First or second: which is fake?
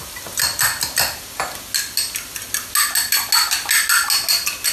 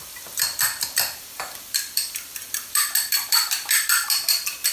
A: second